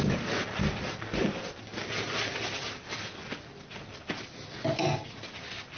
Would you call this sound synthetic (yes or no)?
no